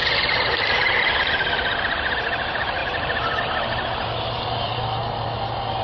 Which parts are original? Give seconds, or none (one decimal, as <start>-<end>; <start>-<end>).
0.0-5.8